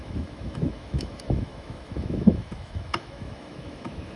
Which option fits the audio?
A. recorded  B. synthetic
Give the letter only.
B